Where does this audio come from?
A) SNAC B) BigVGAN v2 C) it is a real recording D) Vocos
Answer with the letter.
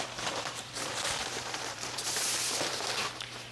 B